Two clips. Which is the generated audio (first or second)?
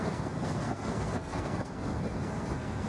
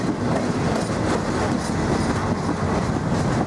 first